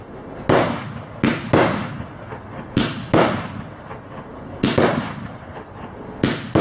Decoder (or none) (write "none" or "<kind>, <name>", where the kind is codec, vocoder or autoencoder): none